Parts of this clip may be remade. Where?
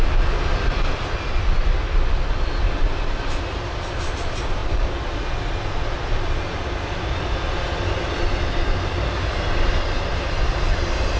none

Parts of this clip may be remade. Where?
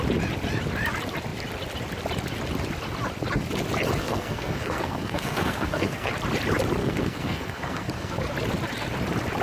4.0-6.1 (codec, SNAC); 6.8-8.2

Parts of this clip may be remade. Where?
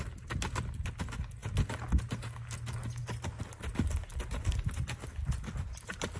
none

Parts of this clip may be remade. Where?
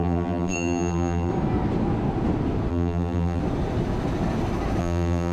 0.0-1.3 (vocoder, BigVGAN v2); 2.7-3.4; 4.8-5.3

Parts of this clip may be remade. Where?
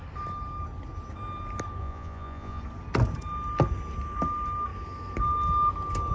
1.8-2.6 (vocoder, Vocos)